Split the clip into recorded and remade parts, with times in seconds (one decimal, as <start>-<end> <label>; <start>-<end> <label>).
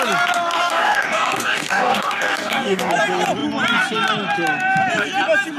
0.0-0.6 recorded; 0.6-2.9 remade; 2.9-5.6 recorded